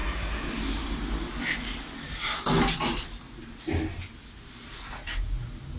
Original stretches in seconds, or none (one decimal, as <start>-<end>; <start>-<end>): 0.0-5.8